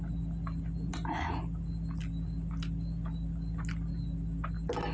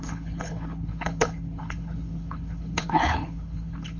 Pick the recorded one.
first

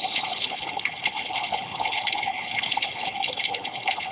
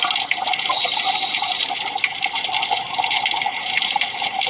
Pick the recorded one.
second